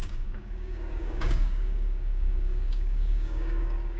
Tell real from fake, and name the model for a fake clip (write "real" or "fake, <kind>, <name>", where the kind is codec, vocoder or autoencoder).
fake, codec, DAC